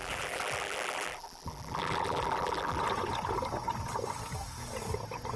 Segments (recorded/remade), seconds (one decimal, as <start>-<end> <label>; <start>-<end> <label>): 0.0-2.8 remade; 2.8-5.4 recorded